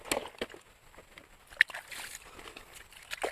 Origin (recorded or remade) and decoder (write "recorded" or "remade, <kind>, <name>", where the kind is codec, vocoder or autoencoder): recorded